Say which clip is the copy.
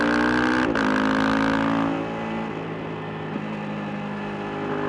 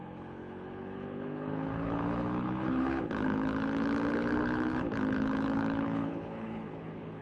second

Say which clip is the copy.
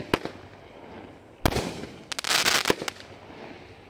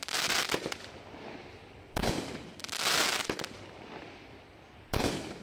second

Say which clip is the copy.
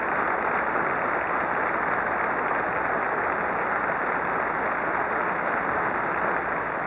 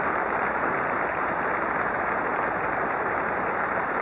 second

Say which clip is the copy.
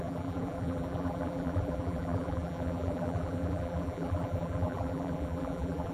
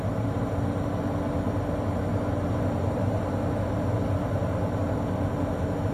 first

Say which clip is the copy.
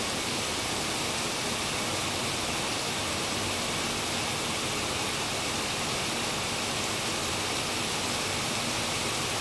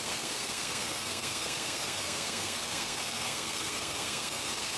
second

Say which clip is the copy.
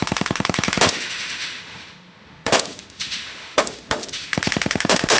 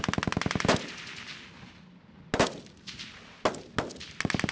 first